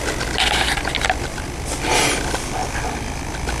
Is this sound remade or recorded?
recorded